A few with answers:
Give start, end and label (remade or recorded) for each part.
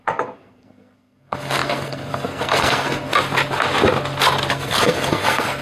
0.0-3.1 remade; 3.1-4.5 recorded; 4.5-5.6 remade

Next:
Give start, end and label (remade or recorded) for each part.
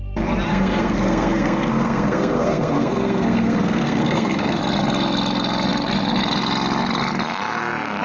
0.0-0.5 recorded; 0.5-4.6 remade; 4.6-8.0 recorded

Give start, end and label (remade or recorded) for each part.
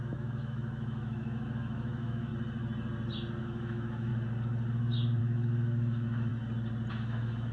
0.0-2.3 remade; 2.3-3.4 recorded; 3.4-4.1 remade; 4.1-5.2 recorded; 5.2-6.3 remade; 6.3-6.9 recorded; 6.9-7.5 remade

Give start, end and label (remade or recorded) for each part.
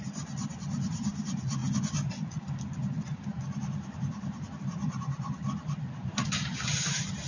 0.0-1.6 remade; 1.6-6.0 recorded; 6.0-7.3 remade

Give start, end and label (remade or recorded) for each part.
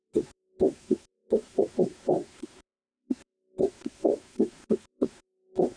0.0-5.8 remade